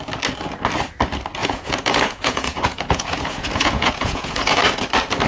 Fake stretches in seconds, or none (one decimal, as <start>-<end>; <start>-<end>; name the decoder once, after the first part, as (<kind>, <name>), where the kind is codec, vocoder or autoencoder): 1.4-4.6 (vocoder, Vocos)